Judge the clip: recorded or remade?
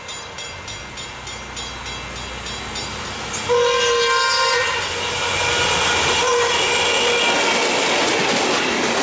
recorded